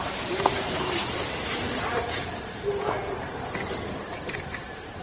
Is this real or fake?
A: fake